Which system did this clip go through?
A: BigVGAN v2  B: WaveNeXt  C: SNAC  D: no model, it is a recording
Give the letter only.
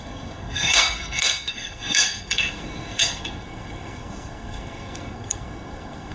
C